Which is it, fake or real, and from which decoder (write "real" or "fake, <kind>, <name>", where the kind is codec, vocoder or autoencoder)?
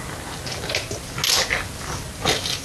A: real